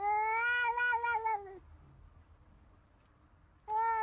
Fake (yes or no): no